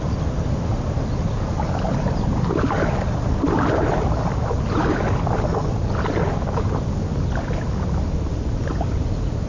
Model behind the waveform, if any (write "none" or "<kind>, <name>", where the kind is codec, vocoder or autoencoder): none